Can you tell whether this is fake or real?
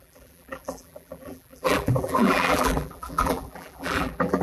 fake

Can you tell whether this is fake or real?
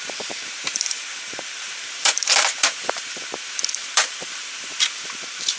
fake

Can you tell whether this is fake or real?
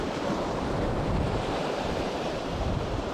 fake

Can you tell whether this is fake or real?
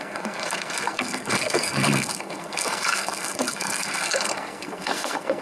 fake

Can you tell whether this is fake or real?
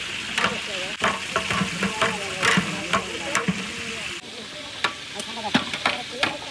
real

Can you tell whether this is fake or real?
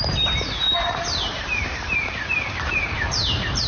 fake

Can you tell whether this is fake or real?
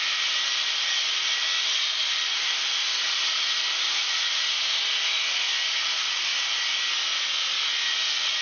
real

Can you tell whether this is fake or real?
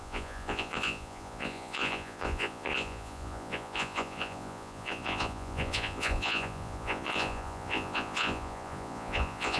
fake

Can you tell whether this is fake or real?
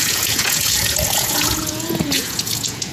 fake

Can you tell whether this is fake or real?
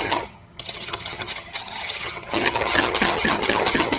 fake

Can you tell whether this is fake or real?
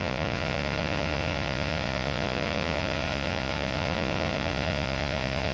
fake